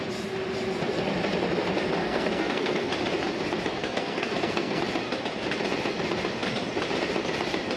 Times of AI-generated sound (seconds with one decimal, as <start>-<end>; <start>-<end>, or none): 2.0-2.9; 3.8-4.8